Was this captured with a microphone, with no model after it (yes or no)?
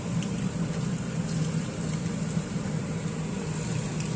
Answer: yes